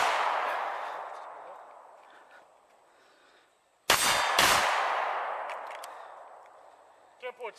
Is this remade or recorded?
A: recorded